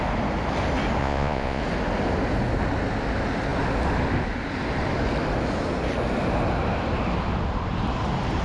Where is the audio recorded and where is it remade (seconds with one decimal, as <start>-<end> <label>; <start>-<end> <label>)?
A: 0.0-1.0 recorded; 1.0-1.6 remade; 1.6-8.4 recorded